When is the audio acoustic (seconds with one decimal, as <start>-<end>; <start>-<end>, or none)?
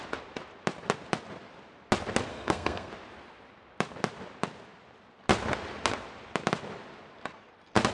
0.0-2.3; 2.9-7.9